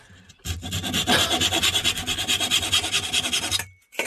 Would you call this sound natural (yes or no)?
yes